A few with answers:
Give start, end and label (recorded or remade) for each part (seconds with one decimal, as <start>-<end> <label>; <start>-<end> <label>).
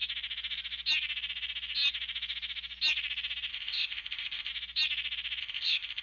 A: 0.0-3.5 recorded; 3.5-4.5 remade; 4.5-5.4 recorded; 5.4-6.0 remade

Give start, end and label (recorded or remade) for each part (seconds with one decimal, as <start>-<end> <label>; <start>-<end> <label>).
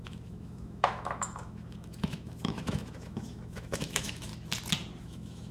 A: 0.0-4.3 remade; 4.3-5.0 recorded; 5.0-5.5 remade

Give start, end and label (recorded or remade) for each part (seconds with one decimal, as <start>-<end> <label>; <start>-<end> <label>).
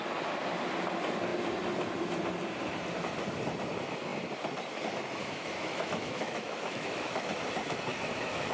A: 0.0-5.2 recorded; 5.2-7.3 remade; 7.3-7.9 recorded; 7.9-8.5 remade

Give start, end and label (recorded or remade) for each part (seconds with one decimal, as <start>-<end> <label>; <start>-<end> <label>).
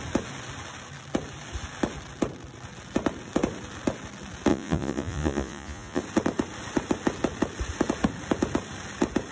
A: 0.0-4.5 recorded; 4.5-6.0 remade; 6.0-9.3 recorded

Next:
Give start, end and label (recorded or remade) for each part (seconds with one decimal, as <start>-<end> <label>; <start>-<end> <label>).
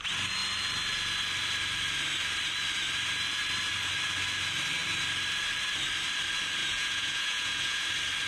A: 0.0-6.6 recorded; 6.6-7.9 remade; 7.9-8.3 recorded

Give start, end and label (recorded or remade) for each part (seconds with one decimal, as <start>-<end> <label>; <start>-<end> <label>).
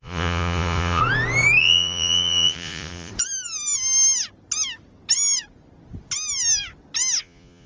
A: 0.0-1.0 remade; 1.0-1.6 recorded; 1.6-3.1 remade; 3.1-7.2 recorded; 7.2-7.7 remade